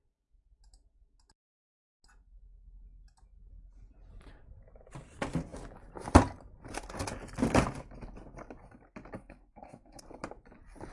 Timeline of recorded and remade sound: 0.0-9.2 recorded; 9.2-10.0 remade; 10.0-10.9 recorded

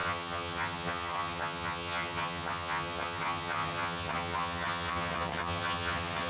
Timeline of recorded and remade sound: 0.0-6.3 remade

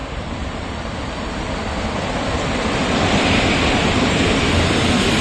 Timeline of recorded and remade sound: 0.0-5.2 remade